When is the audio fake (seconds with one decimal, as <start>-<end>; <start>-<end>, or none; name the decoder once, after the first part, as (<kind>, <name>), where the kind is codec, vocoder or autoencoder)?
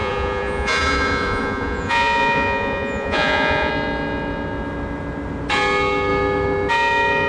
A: 0.0-3.7 (vocoder, Vocos)